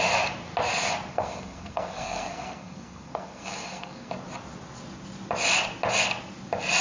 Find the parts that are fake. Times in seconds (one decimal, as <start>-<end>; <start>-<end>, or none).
1.1-4.1